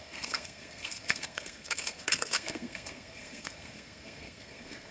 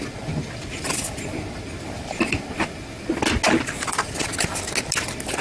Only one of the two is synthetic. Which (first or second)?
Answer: first